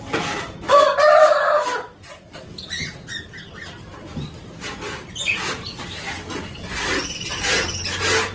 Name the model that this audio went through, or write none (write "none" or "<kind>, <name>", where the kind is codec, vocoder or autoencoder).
none